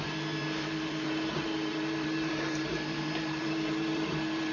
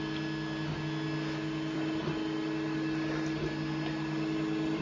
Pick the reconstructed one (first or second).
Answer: first